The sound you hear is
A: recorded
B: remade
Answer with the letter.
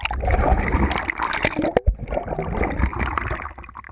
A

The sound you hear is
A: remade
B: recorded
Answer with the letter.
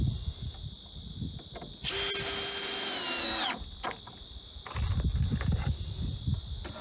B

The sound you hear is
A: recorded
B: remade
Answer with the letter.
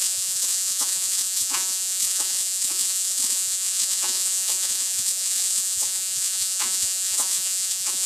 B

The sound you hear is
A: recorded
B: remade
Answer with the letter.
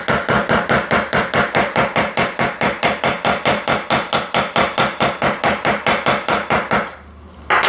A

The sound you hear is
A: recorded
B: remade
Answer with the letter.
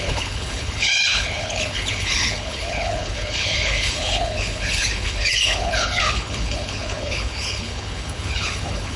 B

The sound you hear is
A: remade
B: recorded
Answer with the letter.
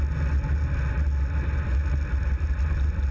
B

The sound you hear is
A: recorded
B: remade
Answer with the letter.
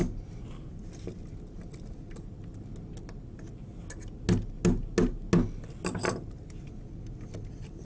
A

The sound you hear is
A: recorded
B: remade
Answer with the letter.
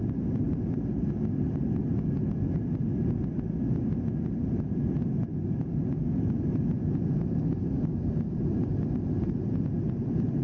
A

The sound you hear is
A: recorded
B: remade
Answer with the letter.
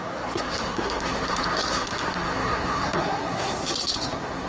B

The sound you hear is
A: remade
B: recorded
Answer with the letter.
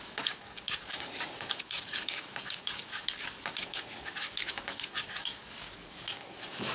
A